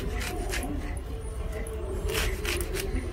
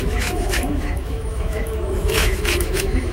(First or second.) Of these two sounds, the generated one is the second